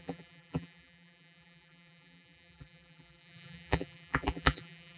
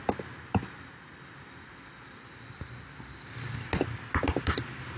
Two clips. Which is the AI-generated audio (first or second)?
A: first